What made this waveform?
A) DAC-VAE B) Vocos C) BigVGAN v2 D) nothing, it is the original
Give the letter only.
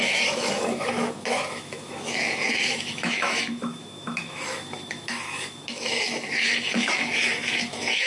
A